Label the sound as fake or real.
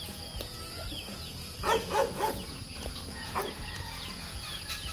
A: fake